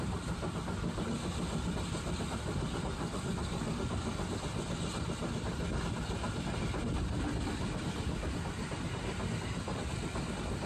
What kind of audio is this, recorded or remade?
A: recorded